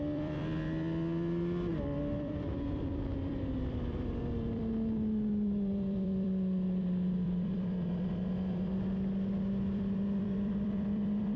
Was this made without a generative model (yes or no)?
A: no